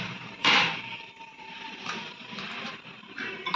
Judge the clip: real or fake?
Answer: fake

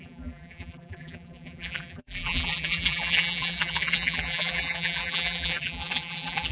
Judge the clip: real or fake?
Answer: fake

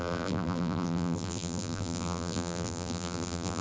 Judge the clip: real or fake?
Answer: fake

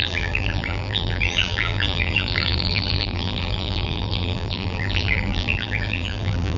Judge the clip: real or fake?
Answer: fake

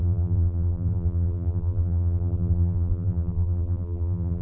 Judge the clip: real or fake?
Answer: fake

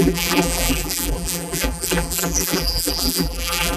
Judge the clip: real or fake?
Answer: fake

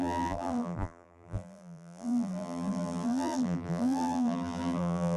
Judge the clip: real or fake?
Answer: fake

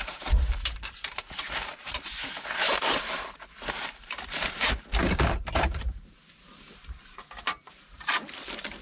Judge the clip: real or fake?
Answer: fake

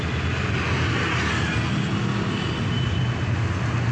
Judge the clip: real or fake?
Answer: real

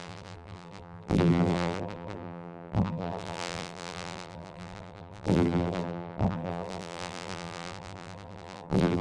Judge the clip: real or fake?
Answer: fake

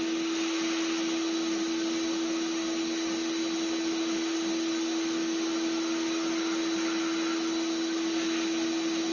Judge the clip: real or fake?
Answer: real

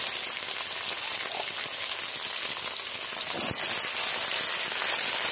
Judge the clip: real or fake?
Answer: real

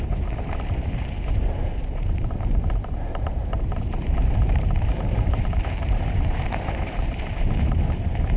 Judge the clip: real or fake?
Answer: fake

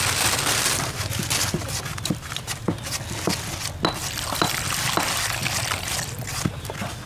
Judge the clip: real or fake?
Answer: real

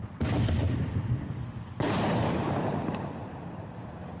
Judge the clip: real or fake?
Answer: fake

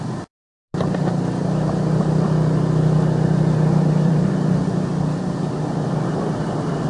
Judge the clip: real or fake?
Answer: fake